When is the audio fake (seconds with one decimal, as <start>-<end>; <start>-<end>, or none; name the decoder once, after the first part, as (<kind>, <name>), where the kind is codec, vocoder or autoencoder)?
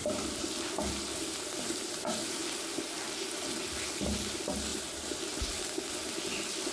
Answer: none